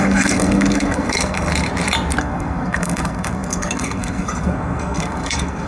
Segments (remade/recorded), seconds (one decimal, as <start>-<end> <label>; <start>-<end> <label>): 0.0-1.5 remade; 1.5-2.2 recorded; 2.2-5.7 remade